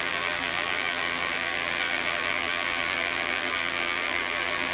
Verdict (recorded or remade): remade